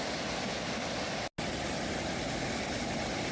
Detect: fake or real real